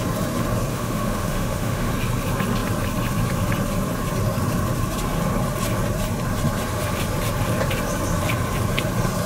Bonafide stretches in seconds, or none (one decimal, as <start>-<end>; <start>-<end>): 0.0-0.7; 1.9-9.3